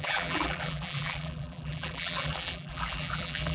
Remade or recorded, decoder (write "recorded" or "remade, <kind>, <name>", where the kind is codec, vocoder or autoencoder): remade, vocoder, BigVGAN v2